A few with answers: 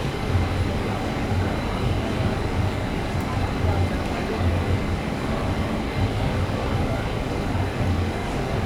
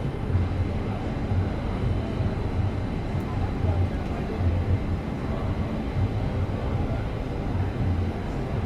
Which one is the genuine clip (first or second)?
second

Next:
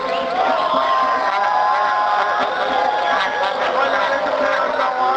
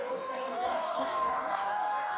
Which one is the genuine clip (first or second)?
first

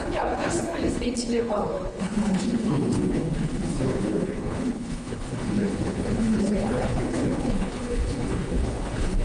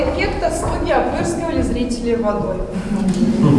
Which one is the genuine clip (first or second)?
second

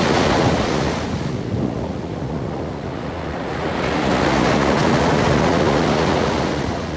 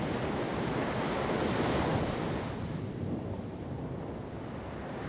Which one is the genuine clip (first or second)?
second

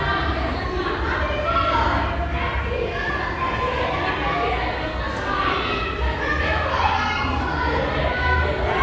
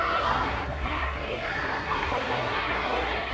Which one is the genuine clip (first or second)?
first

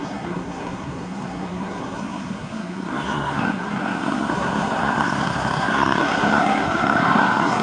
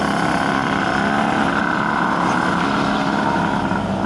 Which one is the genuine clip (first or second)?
second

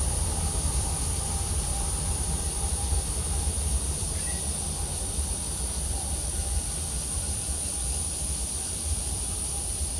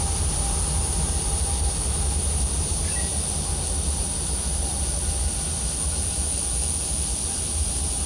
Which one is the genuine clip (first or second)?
second